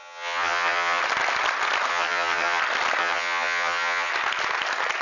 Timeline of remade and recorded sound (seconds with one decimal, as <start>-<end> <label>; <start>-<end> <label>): 0.0-1.0 remade; 1.0-1.9 recorded; 1.9-2.6 remade; 2.6-3.0 recorded; 3.0-4.1 remade; 4.1-5.0 recorded